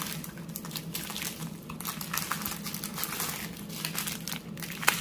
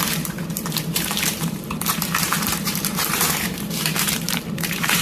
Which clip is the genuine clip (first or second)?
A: first